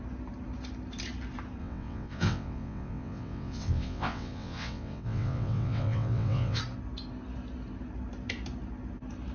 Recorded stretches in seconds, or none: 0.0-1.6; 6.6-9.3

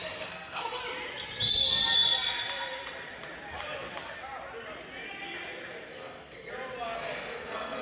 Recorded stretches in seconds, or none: 0.8-5.9; 6.5-7.0

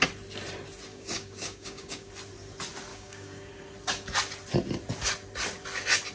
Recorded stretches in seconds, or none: 0.0-0.9; 2.1-2.9; 3.5-6.1

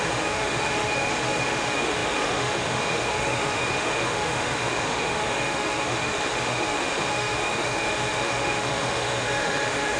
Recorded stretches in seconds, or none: none

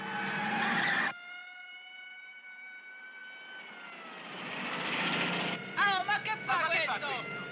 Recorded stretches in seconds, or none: 0.0-7.5

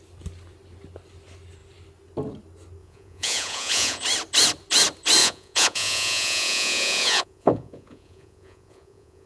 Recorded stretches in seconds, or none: 0.0-2.8; 4.0-5.2

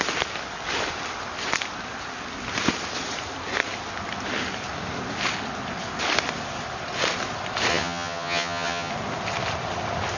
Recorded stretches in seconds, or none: 0.0-7.7; 8.9-10.2